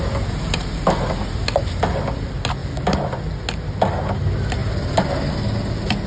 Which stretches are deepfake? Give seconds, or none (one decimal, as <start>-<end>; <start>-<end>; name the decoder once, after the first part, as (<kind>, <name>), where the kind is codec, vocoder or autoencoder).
none